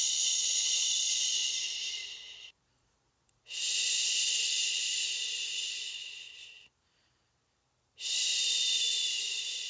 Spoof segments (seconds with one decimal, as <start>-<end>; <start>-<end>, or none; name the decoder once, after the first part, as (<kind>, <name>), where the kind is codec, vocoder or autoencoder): 0.0-8.3 (vocoder, BigVGAN v2)